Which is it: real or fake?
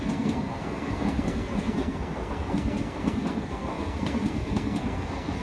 fake